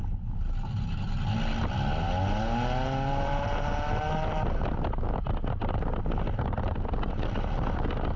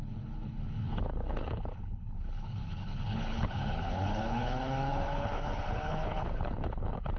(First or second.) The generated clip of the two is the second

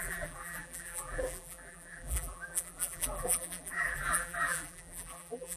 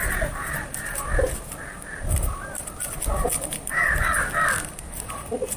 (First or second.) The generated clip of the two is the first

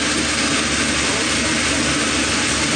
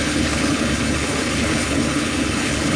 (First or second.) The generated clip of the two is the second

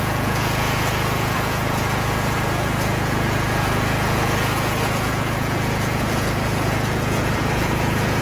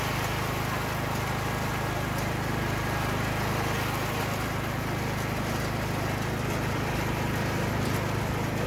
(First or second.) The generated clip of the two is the first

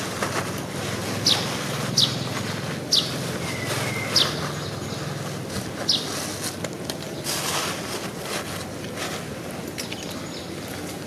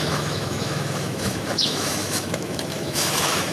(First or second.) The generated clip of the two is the second